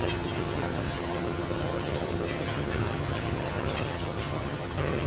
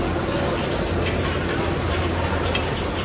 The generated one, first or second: first